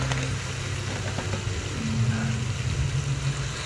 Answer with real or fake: real